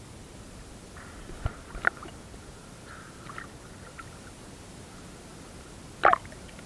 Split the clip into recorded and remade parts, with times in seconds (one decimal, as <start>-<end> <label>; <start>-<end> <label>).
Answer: 0.0-6.7 recorded